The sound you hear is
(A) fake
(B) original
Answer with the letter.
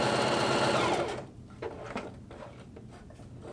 B